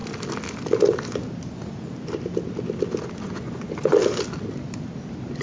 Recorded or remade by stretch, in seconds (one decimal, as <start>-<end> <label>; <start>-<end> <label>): 0.0-3.2 recorded; 3.2-3.9 remade; 3.9-5.4 recorded